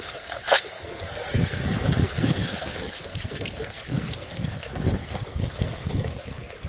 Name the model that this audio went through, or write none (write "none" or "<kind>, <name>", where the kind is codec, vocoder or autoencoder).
codec, SNAC